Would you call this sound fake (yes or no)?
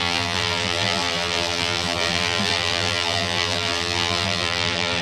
yes